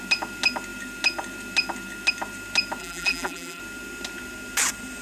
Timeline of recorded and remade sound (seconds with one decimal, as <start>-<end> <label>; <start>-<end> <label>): 0.0-2.8 recorded; 2.8-3.6 remade; 3.6-5.0 recorded